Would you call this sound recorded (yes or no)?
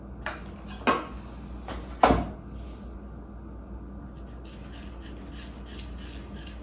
yes